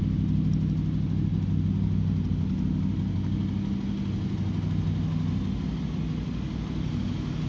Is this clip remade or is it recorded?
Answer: recorded